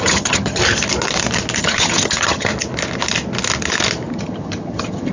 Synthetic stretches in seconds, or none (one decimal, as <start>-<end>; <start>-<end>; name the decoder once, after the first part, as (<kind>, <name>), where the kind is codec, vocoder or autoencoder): 0.0-0.6 (vocoder, HiFi-GAN); 1.6-2.5; 4.1-5.1